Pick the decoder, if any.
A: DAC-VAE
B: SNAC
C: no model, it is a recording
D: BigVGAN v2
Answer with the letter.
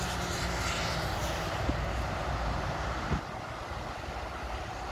C